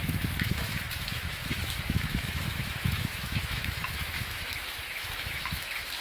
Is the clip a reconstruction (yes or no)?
yes